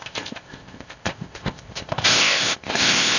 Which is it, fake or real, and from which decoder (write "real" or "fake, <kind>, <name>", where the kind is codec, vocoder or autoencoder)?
fake, codec, ZipCodec